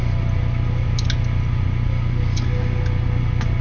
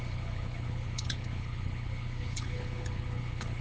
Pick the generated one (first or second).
second